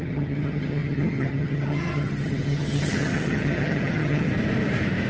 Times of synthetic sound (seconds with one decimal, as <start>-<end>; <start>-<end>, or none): 0.0-4.3